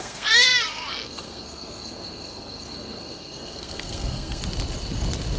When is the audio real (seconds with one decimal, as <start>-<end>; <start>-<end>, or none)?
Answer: 4.4-5.4